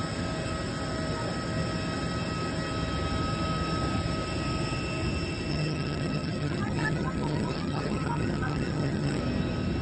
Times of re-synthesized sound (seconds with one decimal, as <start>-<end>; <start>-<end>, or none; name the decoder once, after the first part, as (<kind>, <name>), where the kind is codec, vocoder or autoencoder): 5.5-9.2 (vocoder, HiFi-GAN)